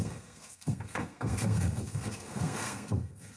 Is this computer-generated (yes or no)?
yes